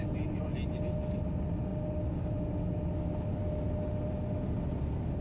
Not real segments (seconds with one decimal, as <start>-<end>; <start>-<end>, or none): none